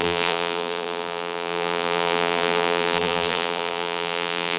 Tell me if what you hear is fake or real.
fake